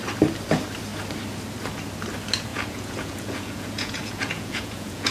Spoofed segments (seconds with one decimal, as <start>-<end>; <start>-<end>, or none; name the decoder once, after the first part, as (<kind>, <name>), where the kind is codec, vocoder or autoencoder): 2.5-5.1 (vocoder, Vocos)